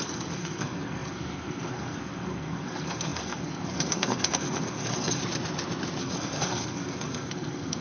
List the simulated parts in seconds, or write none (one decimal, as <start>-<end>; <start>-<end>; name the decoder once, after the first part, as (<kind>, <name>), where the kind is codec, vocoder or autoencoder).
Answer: 0.0-5.2 (codec, SNAC); 6.0-7.8